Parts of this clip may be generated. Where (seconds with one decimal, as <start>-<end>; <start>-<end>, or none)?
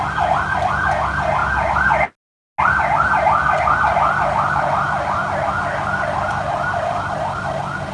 none